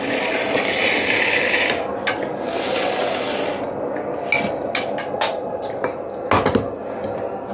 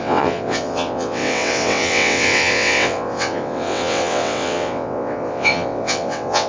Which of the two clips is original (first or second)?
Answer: first